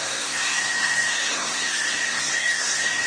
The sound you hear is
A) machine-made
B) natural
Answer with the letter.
A